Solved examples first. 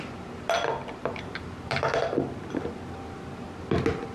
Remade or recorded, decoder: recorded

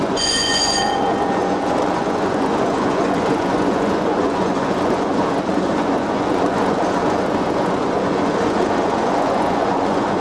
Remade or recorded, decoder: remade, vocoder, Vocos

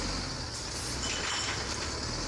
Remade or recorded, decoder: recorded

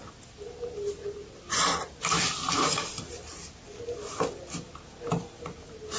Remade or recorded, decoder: recorded